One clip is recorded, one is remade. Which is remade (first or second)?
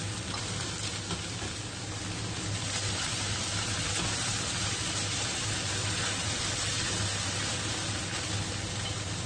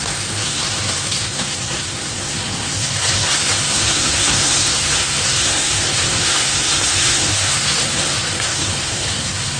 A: second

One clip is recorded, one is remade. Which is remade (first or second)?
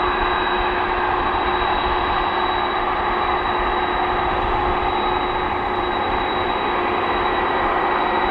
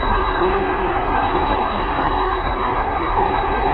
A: second